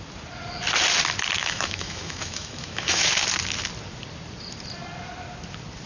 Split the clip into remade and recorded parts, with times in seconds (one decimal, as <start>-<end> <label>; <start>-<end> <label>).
0.0-1.4 recorded; 1.4-3.1 remade; 3.1-5.9 recorded